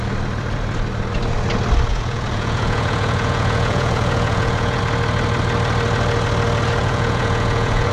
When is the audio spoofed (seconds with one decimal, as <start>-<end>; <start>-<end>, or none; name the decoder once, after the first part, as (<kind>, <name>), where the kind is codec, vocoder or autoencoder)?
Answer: 1.9-4.8 (vocoder, Vocos); 6.8-7.9